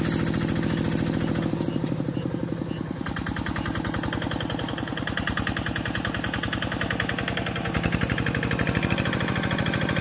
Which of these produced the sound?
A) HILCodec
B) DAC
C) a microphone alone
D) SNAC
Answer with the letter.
C